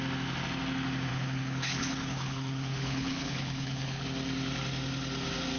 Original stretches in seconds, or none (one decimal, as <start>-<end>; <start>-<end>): 0.0-1.1; 4.0-5.6